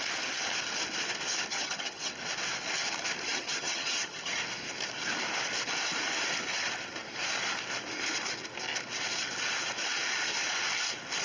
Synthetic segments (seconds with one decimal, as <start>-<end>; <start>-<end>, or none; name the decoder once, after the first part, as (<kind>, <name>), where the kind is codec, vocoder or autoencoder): 1.5-2.1 (vocoder, HiFi-GAN); 3.3-4.3